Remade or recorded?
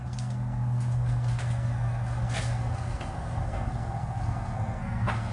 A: remade